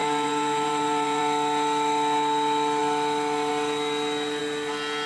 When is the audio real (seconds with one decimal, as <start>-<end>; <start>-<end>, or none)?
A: 1.2-5.1